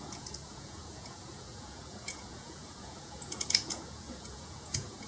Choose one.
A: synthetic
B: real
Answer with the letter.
A